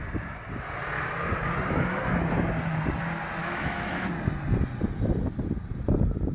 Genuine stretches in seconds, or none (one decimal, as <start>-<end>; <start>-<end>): 0.0-3.4; 4.1-6.3